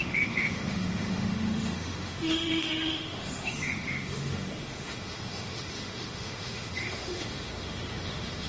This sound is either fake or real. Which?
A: fake